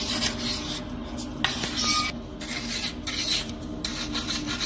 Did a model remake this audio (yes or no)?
no